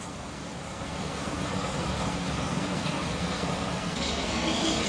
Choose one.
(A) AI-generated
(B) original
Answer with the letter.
A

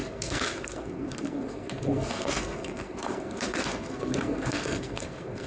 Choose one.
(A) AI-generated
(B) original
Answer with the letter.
A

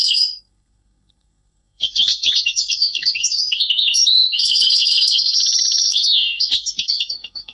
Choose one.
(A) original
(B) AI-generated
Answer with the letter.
B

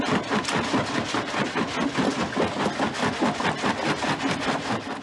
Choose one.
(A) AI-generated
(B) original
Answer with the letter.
B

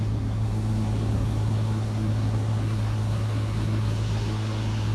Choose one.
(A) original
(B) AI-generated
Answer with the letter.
B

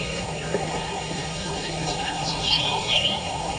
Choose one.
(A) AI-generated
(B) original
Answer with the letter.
A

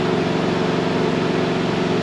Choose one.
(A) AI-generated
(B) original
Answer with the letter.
B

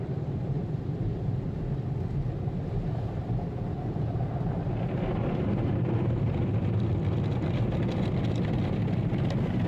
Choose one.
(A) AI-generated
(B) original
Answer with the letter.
B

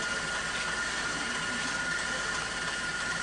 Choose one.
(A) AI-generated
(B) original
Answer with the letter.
B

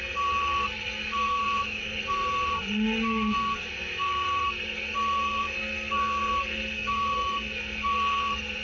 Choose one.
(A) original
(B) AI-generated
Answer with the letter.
B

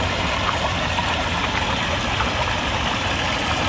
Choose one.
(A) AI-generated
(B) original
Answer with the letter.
B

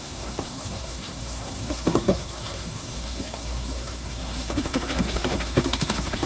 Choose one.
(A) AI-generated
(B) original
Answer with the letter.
A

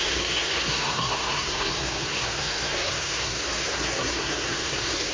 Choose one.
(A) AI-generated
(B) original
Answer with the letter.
A